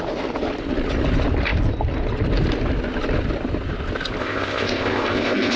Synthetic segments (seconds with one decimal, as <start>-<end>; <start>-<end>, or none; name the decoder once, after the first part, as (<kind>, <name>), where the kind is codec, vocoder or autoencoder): 4.2-5.6 (codec, ZipCodec)